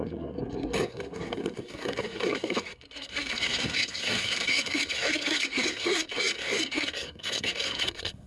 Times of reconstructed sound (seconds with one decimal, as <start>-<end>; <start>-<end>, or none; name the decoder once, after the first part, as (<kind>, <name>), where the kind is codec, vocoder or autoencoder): 0.0-8.3 (codec, SNAC)